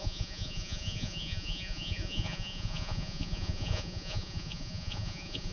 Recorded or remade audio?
remade